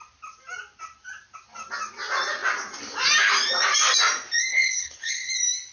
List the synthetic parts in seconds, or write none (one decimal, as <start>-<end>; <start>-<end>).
4.5-5.3